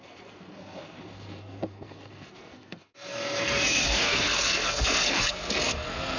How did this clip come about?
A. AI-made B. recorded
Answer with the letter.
A